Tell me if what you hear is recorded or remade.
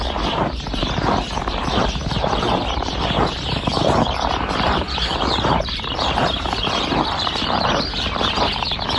remade